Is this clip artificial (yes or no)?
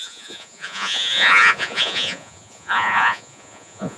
yes